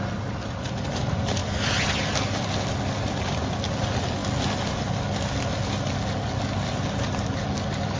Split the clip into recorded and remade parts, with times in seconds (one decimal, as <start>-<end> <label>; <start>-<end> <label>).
0.0-8.0 recorded